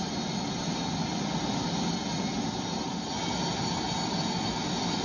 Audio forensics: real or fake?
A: real